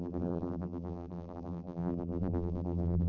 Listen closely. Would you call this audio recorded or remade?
remade